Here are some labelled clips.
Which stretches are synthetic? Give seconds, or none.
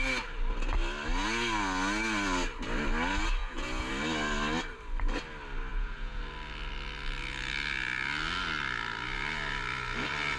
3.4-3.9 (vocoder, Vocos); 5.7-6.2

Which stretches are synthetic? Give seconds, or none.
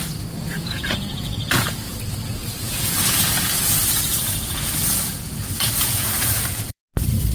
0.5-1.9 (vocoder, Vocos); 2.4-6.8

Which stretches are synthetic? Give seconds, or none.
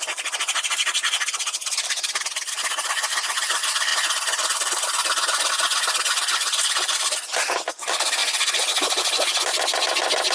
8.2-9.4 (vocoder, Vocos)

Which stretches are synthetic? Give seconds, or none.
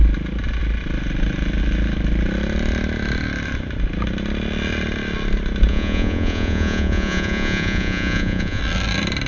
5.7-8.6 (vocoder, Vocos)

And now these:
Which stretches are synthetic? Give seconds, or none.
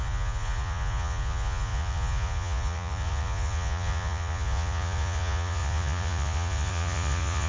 0.0-7.5 (vocoder, Vocos)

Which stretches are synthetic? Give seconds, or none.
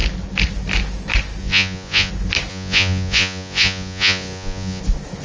1.4-2.1 (vocoder, Vocos); 2.5-4.8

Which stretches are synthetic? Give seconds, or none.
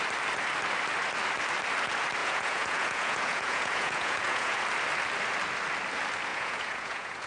2.2-4.6 (vocoder, Vocos); 6.3-7.3